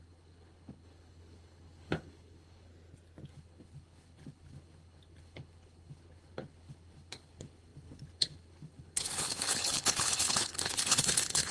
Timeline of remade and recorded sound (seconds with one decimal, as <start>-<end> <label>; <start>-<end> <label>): 0.0-2.7 remade; 2.7-3.3 recorded; 3.3-11.5 remade